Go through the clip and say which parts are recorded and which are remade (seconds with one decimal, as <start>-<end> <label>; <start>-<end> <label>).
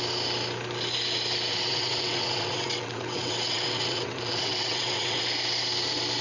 0.0-1.5 recorded; 1.5-5.2 remade; 5.2-6.2 recorded